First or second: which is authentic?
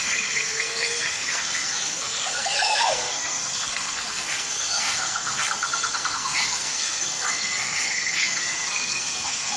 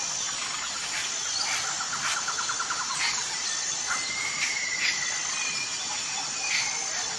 second